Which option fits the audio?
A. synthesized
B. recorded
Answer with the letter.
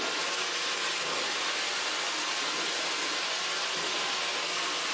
B